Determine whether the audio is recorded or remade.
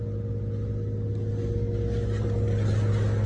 recorded